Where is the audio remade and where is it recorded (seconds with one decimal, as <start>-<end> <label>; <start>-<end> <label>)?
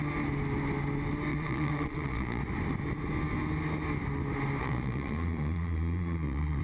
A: 0.0-1.3 recorded; 1.3-2.4 remade; 2.4-4.6 recorded; 4.6-6.6 remade